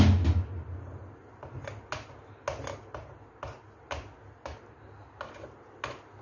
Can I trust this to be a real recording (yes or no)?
yes